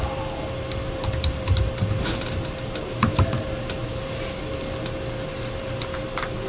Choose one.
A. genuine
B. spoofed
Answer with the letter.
A